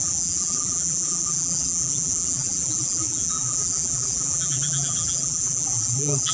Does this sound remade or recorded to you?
remade